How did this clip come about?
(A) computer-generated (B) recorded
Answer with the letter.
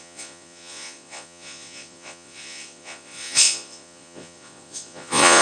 A